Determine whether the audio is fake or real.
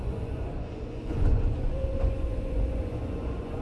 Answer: fake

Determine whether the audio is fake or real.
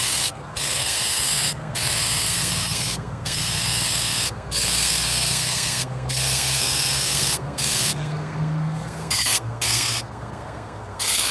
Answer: fake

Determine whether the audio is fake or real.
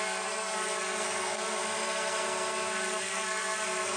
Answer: fake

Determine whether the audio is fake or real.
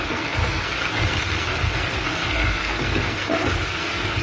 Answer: fake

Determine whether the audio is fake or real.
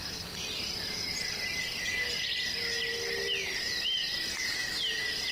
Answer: real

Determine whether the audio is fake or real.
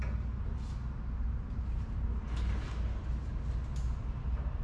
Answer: real